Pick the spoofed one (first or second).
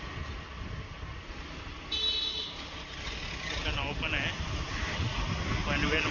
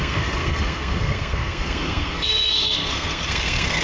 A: second